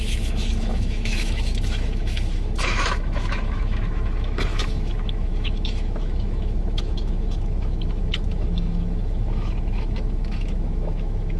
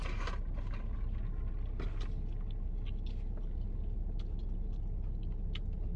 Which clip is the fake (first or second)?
first